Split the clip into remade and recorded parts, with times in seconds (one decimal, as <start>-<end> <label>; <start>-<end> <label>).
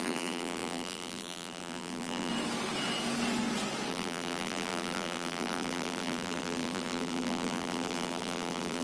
0.0-2.3 remade; 2.3-3.9 recorded; 3.9-8.8 remade